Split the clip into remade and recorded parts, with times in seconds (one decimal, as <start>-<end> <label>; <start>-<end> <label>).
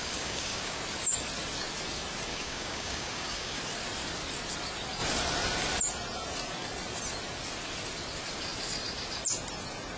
0.0-0.8 remade; 0.8-2.3 recorded; 2.3-3.6 remade; 3.6-10.0 recorded